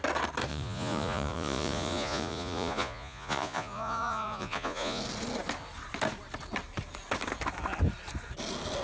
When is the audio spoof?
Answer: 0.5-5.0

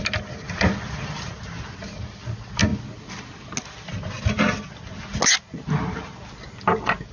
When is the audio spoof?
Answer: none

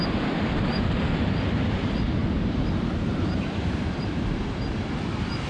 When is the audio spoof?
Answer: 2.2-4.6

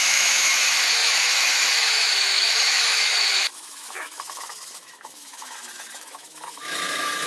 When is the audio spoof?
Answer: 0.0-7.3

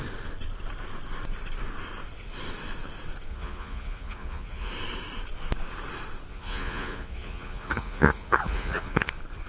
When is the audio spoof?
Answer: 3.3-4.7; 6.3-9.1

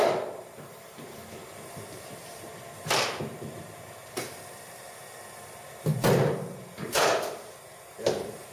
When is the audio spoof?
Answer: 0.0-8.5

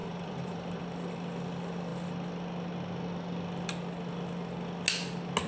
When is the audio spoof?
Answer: 0.0-0.8

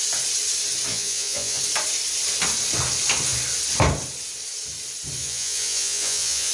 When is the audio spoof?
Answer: 0.9-1.6; 5.2-6.5